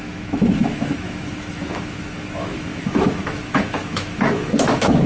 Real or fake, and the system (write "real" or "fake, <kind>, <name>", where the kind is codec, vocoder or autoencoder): fake, autoencoder, DAC-VAE